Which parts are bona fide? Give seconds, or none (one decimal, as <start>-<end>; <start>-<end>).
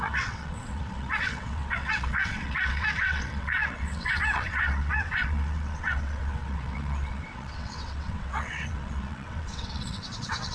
none